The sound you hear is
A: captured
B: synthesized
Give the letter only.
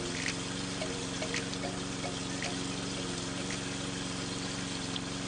A